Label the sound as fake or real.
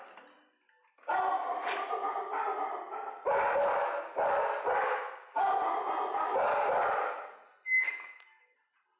real